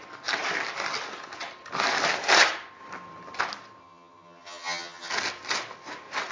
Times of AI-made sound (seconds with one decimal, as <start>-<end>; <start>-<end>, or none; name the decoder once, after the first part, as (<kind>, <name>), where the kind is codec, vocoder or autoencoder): 3.8-5.1 (vocoder, HiFi-GAN)